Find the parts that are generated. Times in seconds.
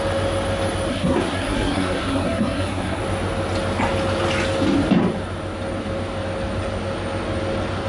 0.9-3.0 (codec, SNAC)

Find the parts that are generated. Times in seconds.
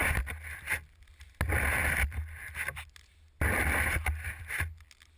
none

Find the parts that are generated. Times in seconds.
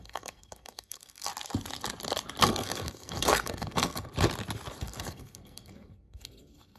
0.0-1.3 (codec, SNAC); 2.4-4.1; 4.8-6.8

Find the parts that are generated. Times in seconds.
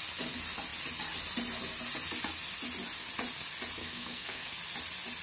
3.8-4.6 (codec, SNAC)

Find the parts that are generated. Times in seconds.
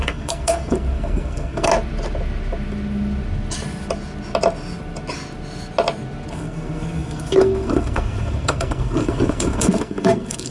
0.0-1.7 (codec, SNAC); 6.3-10.5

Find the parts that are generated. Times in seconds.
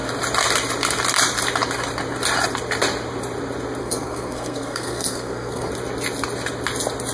3.8-5.7 (codec, SNAC)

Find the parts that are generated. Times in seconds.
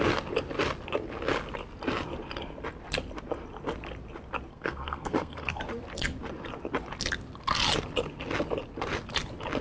4.5-5.6 (codec, SNAC)